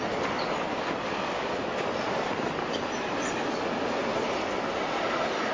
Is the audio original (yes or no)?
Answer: yes